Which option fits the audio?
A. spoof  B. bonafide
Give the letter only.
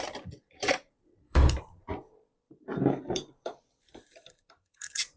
A